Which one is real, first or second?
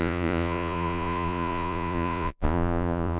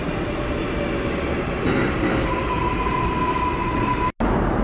second